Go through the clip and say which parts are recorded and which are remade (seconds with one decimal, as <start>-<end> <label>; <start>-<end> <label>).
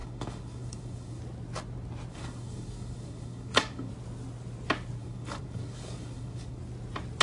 0.0-1.2 remade; 1.2-2.1 recorded; 2.1-3.9 remade; 3.9-5.0 recorded; 5.0-6.6 remade; 6.6-7.2 recorded